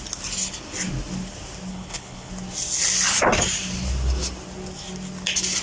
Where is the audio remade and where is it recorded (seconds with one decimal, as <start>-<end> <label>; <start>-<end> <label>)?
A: 0.0-1.7 recorded; 1.7-2.3 remade; 2.3-5.6 recorded